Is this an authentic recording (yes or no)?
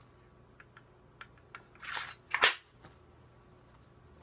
yes